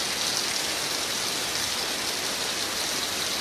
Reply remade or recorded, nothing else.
recorded